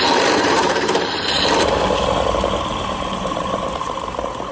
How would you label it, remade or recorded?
remade